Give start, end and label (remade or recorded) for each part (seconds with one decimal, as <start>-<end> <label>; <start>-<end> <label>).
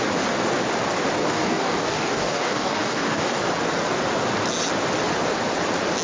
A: 0.0-1.2 recorded; 1.2-3.4 remade; 3.4-6.0 recorded